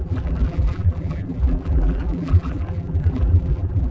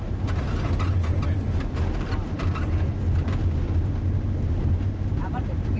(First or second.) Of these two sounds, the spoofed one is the first